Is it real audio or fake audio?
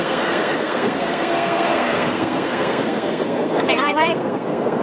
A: fake